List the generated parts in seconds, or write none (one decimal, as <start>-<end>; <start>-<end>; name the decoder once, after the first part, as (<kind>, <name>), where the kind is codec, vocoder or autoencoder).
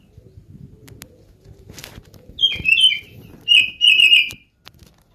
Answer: none